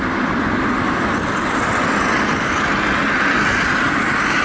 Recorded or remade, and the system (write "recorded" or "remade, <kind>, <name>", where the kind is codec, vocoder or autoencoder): recorded